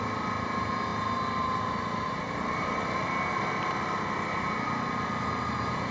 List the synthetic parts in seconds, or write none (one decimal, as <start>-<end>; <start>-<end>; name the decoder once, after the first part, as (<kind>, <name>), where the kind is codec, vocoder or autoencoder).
none

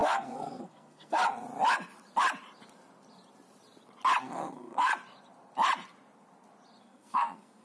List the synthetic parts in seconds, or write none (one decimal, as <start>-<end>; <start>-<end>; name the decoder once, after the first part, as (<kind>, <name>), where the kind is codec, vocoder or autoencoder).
0.0-1.2 (codec, SNAC); 4.2-4.9; 6.8-7.6

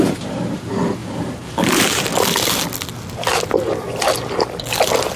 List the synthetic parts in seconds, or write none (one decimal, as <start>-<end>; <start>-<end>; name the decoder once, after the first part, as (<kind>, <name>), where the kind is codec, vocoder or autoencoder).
1.0-2.1 (vocoder, BigVGAN v2); 3.3-4.0